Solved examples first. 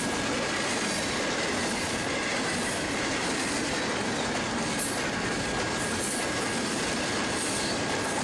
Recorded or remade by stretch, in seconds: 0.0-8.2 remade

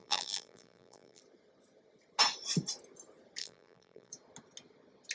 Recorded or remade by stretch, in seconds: 0.0-1.2 remade; 1.2-3.4 recorded; 3.4-4.1 remade; 4.1-5.1 recorded

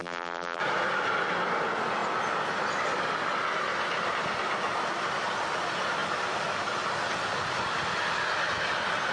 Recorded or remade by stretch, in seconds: 0.0-0.6 remade; 0.6-9.1 recorded